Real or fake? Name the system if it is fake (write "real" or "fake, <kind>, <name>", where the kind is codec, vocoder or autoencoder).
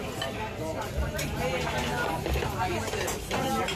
real